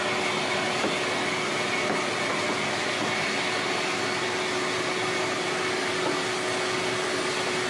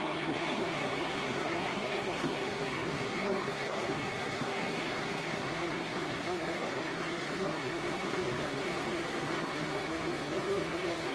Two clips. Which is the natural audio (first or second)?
first